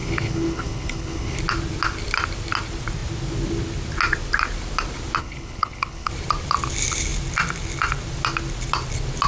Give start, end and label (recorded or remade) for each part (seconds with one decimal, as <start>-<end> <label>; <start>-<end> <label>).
0.0-1.4 remade; 1.4-5.2 recorded; 5.2-6.1 remade; 6.1-9.3 recorded